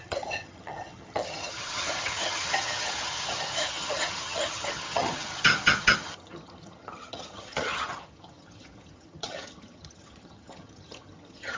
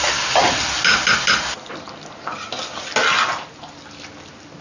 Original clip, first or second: second